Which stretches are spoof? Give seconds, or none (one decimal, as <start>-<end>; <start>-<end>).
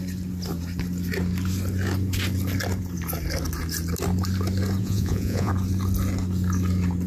4.8-5.5